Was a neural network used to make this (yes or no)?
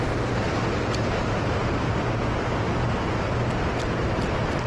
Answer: no